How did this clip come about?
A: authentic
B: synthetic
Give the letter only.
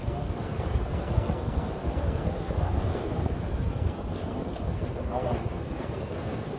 B